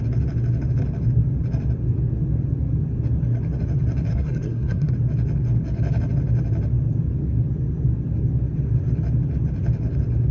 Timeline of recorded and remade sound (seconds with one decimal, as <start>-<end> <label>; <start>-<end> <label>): 0.0-4.1 recorded; 4.1-4.9 remade; 4.9-10.3 recorded